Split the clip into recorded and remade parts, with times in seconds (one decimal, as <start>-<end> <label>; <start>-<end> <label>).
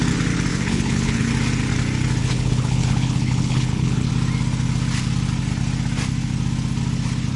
0.0-0.5 recorded; 0.5-1.3 remade; 1.3-2.2 recorded; 2.2-4.1 remade; 4.1-7.4 recorded